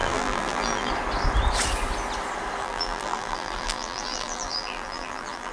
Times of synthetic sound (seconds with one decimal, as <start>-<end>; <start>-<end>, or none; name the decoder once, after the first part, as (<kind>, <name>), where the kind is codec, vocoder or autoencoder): 0.0-0.9 (vocoder, BigVGAN v2); 2.6-5.5